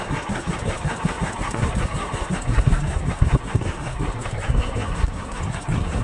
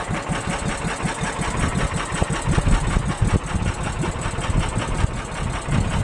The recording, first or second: second